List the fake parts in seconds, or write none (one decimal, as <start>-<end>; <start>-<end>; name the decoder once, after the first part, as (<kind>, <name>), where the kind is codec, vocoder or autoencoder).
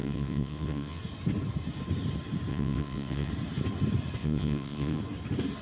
0.0-1.0 (vocoder, WaveNeXt); 2.5-3.3; 4.2-5.0